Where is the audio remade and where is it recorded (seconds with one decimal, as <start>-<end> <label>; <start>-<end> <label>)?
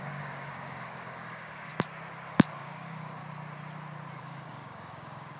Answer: 0.0-1.7 remade; 1.7-2.5 recorded; 2.5-3.2 remade; 3.2-4.2 recorded; 4.2-5.4 remade